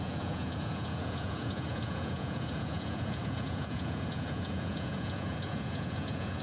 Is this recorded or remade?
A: remade